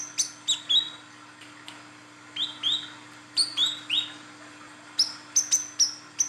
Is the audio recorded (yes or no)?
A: yes